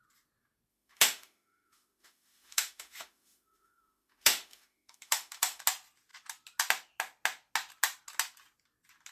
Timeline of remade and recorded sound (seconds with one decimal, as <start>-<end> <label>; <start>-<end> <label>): 0.0-0.7 recorded; 0.7-5.6 remade; 5.6-9.1 recorded